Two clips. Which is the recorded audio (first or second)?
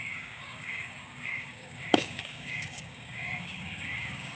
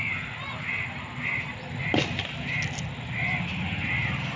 second